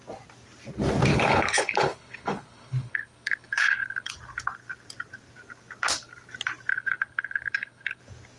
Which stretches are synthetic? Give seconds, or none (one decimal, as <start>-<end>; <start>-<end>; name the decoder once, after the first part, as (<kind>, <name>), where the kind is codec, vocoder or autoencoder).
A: 1.1-4.1 (codec, HILCodec); 6.7-8.0